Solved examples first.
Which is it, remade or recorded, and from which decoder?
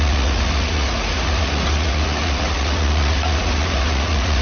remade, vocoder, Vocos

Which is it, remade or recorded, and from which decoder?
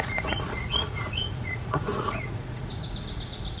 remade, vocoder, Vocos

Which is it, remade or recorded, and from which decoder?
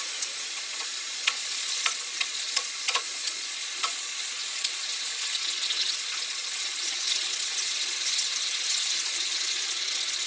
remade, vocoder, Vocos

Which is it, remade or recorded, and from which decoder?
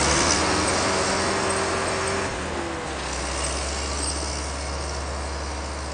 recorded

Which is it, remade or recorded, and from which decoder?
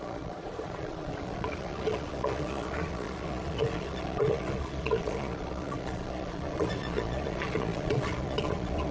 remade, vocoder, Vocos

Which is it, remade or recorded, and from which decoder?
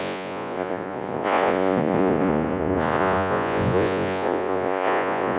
remade, vocoder, Vocos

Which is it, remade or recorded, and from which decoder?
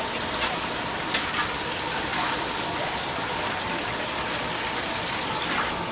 recorded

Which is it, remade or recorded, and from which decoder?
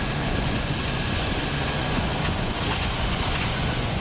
remade, vocoder, Vocos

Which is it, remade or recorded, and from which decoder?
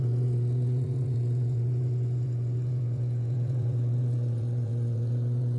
remade, vocoder, Vocos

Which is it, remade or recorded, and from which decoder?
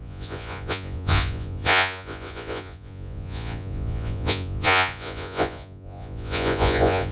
remade, vocoder, Vocos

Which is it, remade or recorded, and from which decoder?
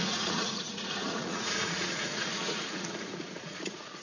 remade, vocoder, Vocos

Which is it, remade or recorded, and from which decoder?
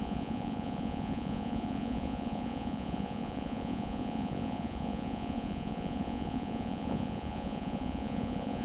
remade, vocoder, Vocos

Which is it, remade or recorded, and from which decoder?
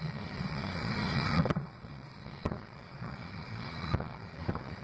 remade, vocoder, Vocos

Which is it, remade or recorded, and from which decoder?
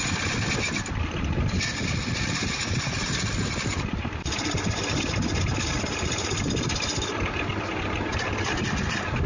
recorded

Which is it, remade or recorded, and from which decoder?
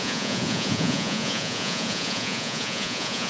remade, vocoder, Vocos